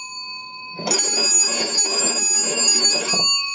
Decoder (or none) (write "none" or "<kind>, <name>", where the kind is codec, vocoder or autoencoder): autoencoder, DAC-VAE